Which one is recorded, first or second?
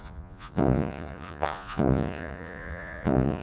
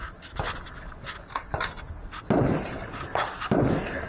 second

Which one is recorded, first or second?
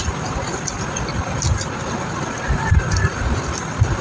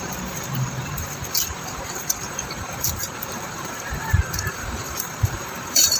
first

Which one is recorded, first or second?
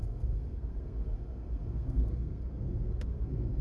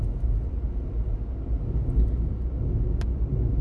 second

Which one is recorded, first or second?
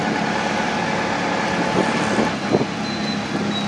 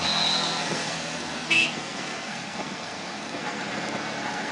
first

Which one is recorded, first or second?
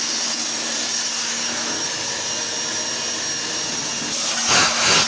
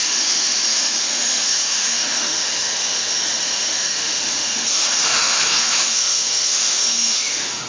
first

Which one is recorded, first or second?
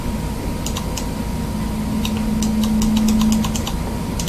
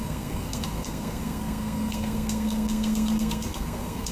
first